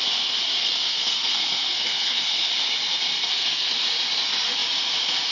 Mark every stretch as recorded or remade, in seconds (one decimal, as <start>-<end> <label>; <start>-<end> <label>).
0.0-0.6 recorded; 0.6-2.5 remade; 2.5-3.2 recorded; 3.2-3.7 remade; 3.7-5.3 recorded